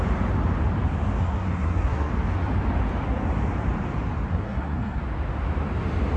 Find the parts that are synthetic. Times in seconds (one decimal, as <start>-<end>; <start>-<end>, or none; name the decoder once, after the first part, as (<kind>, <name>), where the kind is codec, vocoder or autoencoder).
1.2-2.1 (codec, SNAC); 4.3-5.0